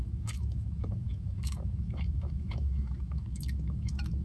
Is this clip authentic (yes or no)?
no